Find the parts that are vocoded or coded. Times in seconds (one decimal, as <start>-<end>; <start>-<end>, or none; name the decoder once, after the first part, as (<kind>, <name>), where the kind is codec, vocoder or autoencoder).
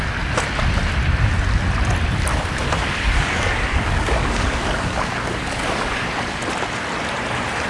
2.3-6.1 (codec, DAC)